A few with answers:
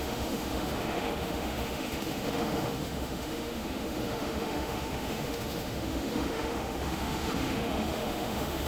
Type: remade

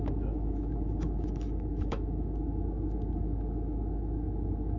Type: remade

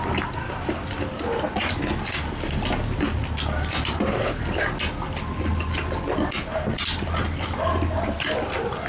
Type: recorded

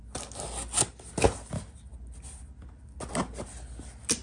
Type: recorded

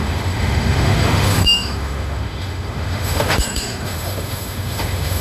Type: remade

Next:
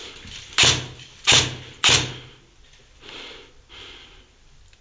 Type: recorded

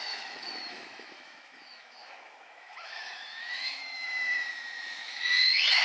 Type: remade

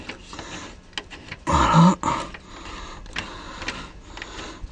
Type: recorded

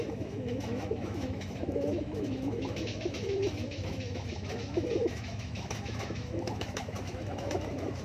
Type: remade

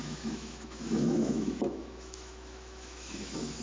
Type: remade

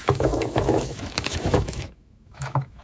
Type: remade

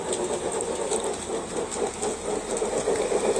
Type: recorded